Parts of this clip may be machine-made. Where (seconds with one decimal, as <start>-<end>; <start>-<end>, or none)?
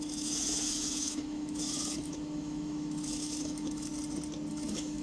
0.0-3.9; 4.5-5.0